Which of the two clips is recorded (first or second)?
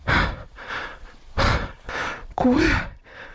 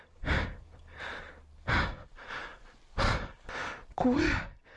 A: second